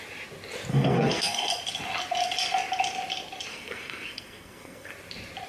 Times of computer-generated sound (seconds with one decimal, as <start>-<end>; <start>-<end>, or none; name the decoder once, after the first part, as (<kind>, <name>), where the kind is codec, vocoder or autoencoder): 0.7-1.5 (codec, SNAC); 3.5-4.9